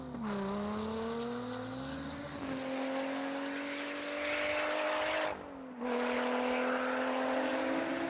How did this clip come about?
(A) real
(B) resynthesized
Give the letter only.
A